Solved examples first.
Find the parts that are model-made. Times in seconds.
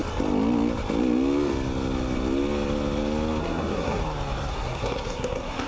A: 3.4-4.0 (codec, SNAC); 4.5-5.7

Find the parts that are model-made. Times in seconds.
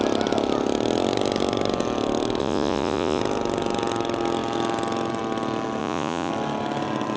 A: 2.4-3.2 (vocoder, Vocos); 5.8-6.3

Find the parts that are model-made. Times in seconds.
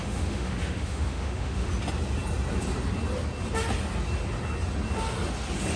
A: 0.0-1.7 (autoencoder, DAC-VAE)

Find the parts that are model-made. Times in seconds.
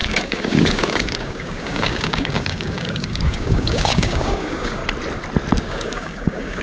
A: 0.0-4.8 (codec, DAC); 5.6-6.6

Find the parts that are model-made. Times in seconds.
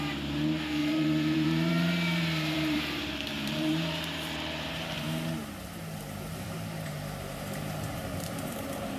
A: 0.8-5.0 (vocoder, BigVGAN v2); 6.3-9.0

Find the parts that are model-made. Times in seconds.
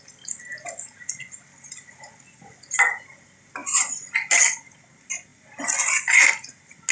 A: none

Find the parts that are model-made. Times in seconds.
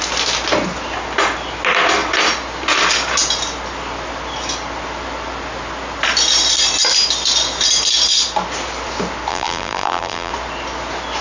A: 9.3-10.3 (vocoder, BigVGAN v2)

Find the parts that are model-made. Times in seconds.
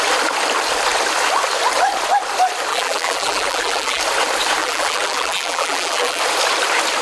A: 2.7-4.0 (vocoder, BigVGAN v2); 4.6-6.2